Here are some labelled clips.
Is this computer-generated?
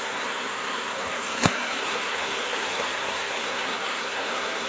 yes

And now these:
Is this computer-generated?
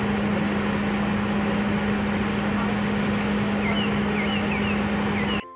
no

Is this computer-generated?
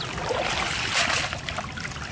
no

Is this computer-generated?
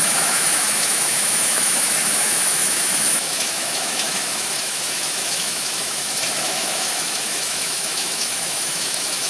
yes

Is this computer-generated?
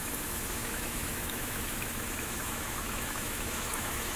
yes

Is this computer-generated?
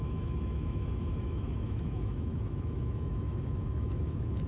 yes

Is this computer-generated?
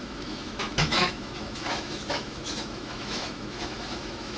yes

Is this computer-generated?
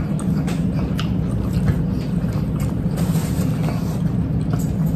no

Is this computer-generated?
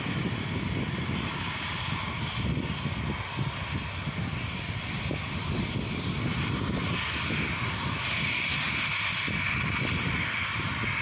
no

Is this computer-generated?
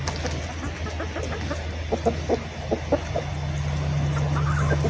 no